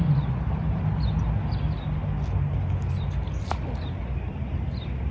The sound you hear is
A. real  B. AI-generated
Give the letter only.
A